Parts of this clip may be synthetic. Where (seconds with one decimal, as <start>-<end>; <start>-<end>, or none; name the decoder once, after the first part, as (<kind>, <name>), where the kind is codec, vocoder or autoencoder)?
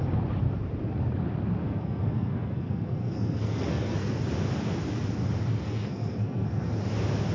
1.6-4.2 (codec, SNAC); 5.5-6.7